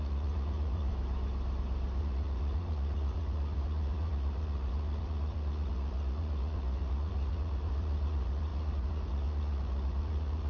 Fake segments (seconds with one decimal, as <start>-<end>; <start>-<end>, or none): 0.0-0.9; 2.0-10.5